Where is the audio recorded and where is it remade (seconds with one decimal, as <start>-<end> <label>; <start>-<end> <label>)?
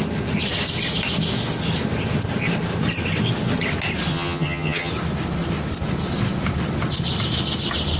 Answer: 0.0-4.1 recorded; 4.1-4.9 remade; 4.9-8.0 recorded